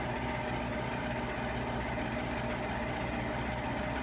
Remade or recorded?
recorded